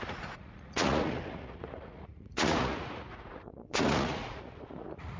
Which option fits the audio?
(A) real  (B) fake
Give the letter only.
B